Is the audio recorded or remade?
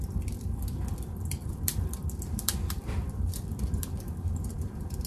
remade